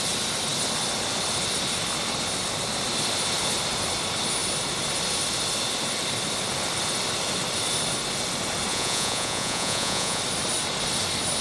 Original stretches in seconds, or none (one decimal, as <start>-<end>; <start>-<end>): 0.0-8.7; 10.2-11.4